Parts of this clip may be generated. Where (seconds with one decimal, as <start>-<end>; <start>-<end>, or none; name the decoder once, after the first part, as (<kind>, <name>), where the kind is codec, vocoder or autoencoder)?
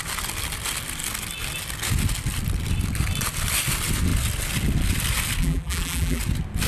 5.4-6.2 (vocoder, BigVGAN v2)